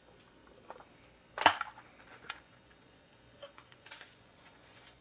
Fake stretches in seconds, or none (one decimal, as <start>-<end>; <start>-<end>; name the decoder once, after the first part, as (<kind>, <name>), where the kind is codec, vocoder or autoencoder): 2.1-5.0 (vocoder, Vocos)